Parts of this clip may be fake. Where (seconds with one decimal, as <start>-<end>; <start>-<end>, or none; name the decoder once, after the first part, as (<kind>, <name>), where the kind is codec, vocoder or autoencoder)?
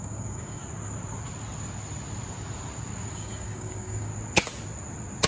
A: 0.0-0.6 (codec, DAC); 3.1-4.1